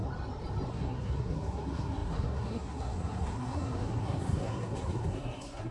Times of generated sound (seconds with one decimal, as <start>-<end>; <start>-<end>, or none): 0.7-5.7